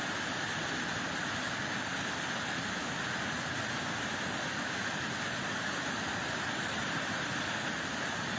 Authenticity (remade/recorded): recorded